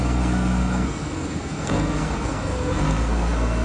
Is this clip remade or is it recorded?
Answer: remade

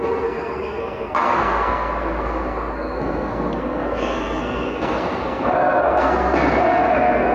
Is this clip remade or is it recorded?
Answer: remade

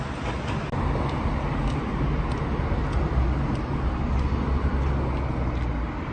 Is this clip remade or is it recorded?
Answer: recorded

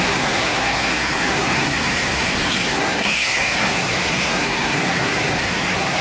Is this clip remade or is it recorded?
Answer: remade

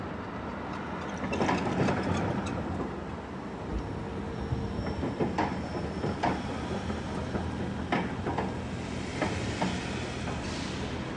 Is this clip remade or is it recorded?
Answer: recorded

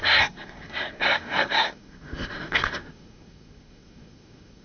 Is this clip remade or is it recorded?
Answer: remade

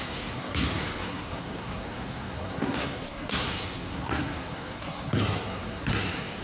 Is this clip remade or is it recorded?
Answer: remade